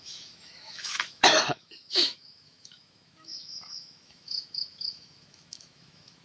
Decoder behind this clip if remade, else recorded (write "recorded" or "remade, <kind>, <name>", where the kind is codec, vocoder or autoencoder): remade, autoencoder, DAC-VAE